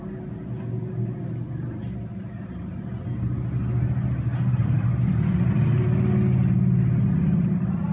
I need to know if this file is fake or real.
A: real